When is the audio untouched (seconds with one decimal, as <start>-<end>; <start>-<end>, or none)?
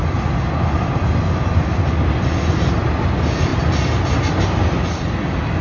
0.0-5.6